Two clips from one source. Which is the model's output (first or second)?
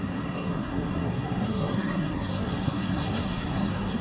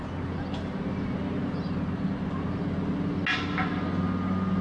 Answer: first